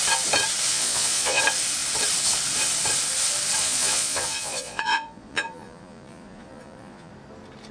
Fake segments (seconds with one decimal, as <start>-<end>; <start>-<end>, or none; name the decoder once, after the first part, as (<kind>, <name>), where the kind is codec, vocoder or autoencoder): 0.7-1.4 (vocoder, Vocos); 3.6-7.1